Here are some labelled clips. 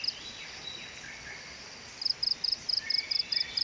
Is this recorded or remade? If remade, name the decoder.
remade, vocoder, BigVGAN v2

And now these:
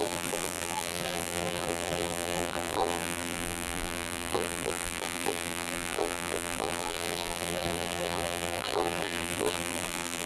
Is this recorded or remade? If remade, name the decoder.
remade, vocoder, BigVGAN v2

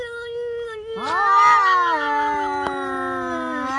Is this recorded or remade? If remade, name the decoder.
recorded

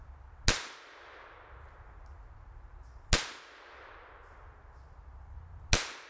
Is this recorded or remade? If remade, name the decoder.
recorded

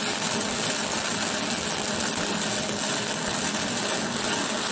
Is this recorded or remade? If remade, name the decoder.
recorded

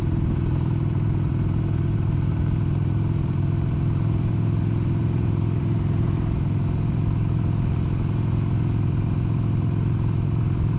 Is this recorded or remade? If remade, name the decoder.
remade, vocoder, BigVGAN v2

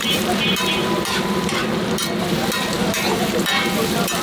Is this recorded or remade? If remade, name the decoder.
remade, vocoder, BigVGAN v2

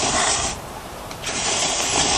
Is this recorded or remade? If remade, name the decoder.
remade, vocoder, BigVGAN v2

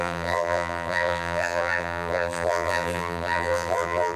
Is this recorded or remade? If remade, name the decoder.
remade, vocoder, BigVGAN v2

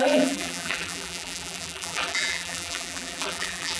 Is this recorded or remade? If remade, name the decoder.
remade, vocoder, BigVGAN v2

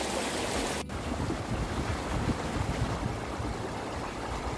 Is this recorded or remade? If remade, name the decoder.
recorded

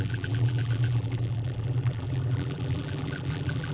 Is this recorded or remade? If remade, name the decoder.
remade, vocoder, BigVGAN v2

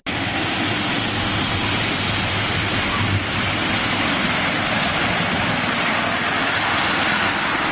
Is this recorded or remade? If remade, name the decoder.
recorded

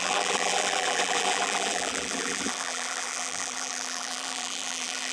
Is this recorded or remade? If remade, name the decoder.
remade, vocoder, BigVGAN v2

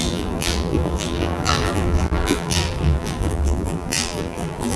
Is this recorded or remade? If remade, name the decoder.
remade, vocoder, BigVGAN v2